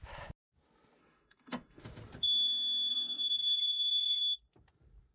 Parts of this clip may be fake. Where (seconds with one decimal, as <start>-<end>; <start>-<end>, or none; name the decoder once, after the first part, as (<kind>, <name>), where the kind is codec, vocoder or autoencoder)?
1.0-1.8 (codec, SNAC); 2.9-4.2